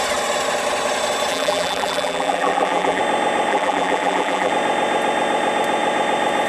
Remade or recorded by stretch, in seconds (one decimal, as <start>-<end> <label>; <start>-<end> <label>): 0.0-1.3 recorded; 1.3-3.0 remade; 3.0-3.5 recorded; 3.5-4.5 remade; 4.5-6.5 recorded